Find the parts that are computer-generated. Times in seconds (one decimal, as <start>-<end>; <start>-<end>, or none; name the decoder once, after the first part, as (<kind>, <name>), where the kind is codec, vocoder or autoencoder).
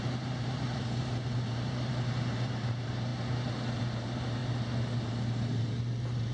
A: 0.0-3.1 (vocoder, BigVGAN v2); 3.8-4.4; 5.1-6.3